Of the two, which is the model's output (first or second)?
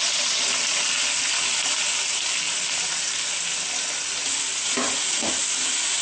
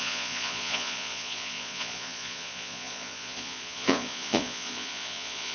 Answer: second